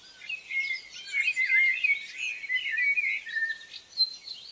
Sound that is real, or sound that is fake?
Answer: real